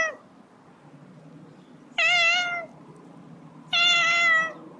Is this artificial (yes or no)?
no